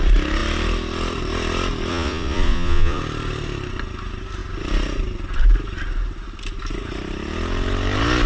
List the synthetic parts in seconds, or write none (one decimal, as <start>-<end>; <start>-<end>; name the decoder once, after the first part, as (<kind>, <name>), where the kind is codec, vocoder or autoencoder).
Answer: 1.9-3.0 (vocoder, Vocos)